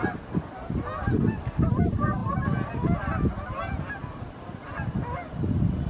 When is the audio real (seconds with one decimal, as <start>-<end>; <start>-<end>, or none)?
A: 0.0-5.9

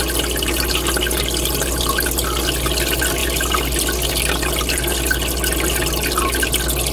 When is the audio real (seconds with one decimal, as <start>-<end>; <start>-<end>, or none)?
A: 0.0-6.9

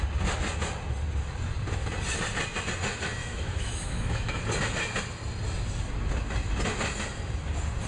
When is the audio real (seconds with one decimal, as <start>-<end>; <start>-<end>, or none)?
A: 0.0-3.2; 4.4-7.9

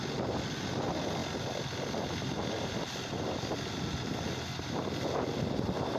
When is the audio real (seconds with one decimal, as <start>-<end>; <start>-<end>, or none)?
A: 0.0-6.0

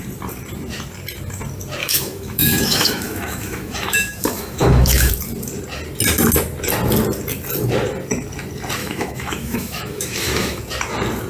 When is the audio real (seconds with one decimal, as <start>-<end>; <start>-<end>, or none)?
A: 0.0-1.8; 5.1-8.8; 10.6-11.3